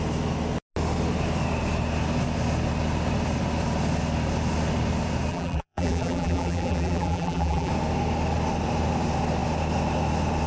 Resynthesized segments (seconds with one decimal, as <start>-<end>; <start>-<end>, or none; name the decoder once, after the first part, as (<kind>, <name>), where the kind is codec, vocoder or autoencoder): 5.3-7.7 (vocoder, BigVGAN v2)